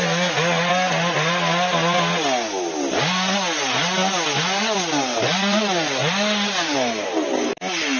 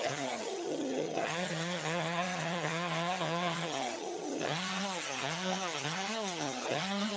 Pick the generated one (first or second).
second